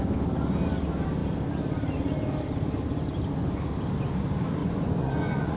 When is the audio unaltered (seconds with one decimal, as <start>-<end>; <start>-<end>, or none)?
0.0-4.6